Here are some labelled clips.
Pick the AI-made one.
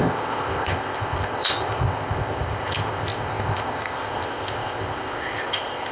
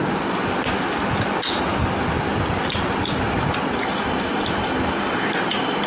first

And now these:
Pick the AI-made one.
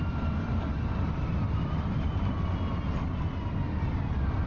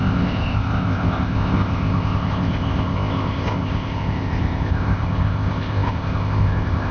second